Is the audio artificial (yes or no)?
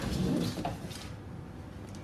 no